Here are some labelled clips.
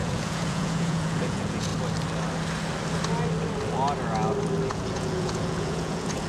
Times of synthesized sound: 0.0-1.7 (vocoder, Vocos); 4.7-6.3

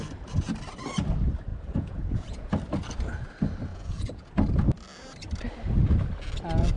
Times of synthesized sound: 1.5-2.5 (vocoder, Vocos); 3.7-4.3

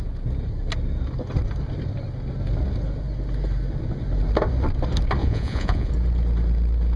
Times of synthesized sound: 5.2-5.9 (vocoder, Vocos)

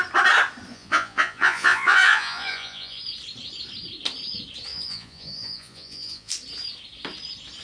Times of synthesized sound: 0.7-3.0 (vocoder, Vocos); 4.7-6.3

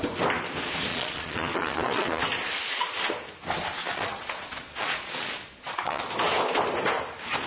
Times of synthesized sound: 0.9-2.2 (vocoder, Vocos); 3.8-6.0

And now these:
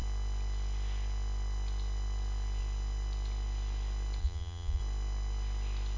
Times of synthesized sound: 4.2-4.8 (vocoder, Vocos)

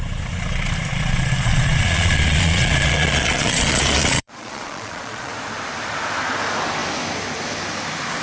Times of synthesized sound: 0.9-5.3 (vocoder, Vocos)